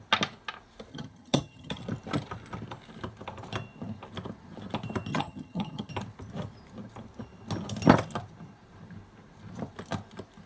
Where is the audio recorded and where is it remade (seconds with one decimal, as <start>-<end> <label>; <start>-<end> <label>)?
0.0-0.9 recorded; 0.9-1.8 remade; 1.8-5.1 recorded; 5.1-5.9 remade; 5.9-10.5 recorded